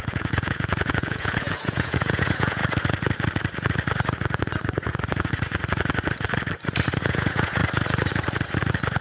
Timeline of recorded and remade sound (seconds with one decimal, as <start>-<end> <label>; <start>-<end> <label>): 0.0-2.6 remade; 2.6-7.0 recorded; 7.0-7.6 remade; 7.6-9.0 recorded